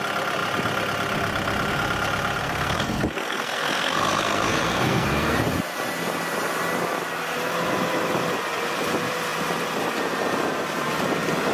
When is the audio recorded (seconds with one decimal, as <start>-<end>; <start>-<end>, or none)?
0.0-2.4; 5.4-11.5